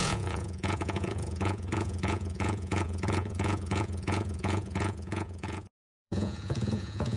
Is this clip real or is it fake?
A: fake